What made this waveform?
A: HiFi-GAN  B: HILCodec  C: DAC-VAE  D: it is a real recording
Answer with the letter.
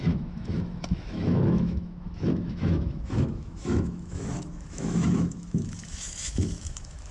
C